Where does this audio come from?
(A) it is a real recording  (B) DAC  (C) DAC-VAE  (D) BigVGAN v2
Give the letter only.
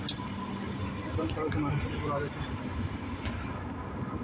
A